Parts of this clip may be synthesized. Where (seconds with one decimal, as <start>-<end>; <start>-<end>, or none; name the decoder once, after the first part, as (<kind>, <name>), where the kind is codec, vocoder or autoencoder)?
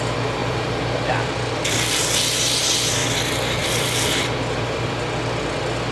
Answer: 0.4-2.0 (vocoder, BigVGAN v2); 3.0-5.0